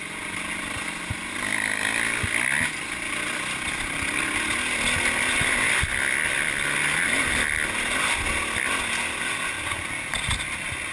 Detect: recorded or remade recorded